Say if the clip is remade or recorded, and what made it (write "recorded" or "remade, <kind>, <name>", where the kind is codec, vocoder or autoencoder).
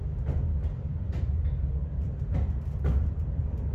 recorded